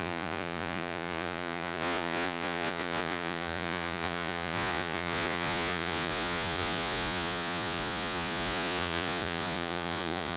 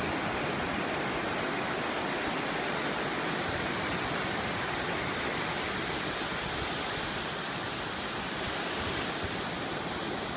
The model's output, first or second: first